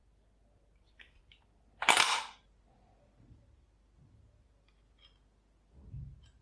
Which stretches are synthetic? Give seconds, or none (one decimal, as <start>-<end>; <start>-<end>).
none